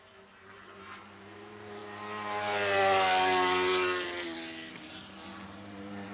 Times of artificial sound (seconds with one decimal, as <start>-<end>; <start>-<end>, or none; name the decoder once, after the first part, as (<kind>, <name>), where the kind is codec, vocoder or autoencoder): 0.0-1.8 (vocoder, BigVGAN v2); 4.7-6.1